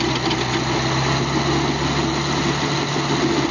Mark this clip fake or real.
real